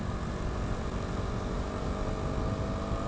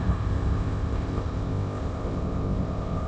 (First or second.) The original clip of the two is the first